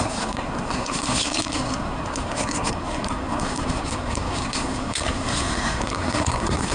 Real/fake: fake